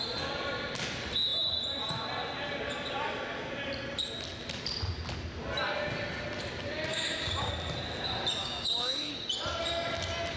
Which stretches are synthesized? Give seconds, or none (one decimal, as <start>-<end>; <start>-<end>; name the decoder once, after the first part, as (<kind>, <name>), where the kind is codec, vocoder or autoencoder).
6.9-7.5 (codec, DAC); 8.4-9.1